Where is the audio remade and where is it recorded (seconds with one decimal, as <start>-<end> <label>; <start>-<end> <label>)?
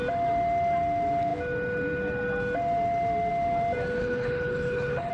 0.0-4.0 recorded; 4.0-5.1 remade